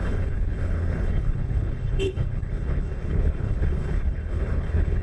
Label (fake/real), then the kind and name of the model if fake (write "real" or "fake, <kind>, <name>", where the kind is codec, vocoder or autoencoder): fake, codec, HILCodec